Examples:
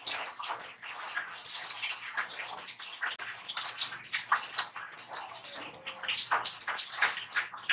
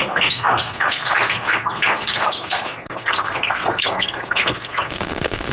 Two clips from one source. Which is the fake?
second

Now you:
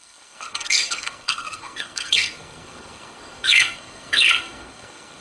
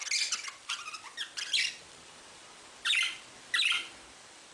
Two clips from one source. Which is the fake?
first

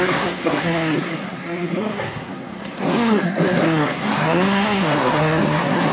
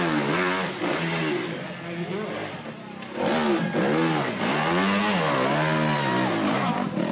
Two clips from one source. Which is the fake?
first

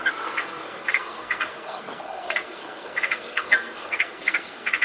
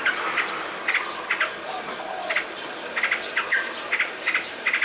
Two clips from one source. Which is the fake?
first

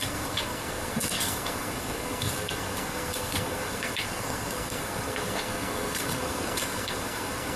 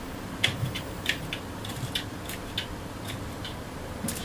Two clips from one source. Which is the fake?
first